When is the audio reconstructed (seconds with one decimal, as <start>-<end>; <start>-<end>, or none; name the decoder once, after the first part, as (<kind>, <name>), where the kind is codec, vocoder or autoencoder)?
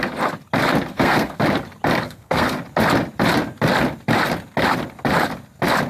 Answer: 0.9-1.4 (codec, SNAC); 2.0-2.6